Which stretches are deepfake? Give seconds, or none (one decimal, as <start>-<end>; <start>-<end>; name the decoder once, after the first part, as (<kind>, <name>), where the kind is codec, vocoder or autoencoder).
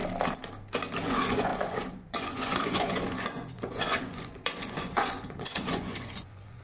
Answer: 1.0-6.6 (vocoder, Vocos)